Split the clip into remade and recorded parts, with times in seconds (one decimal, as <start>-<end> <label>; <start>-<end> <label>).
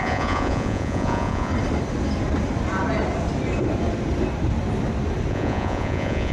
0.0-1.5 remade; 1.5-5.3 recorded; 5.3-6.3 remade